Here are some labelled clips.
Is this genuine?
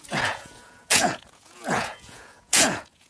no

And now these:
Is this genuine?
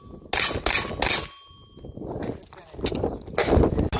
yes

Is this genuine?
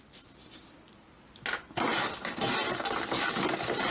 yes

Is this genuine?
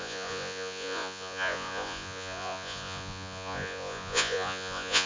no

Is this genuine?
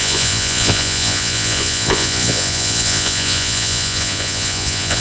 no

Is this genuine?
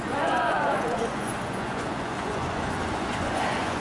no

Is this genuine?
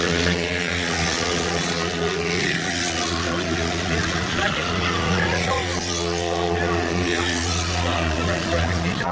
no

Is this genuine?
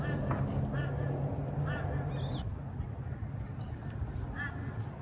yes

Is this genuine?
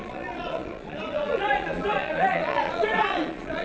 no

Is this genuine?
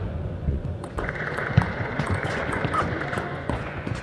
no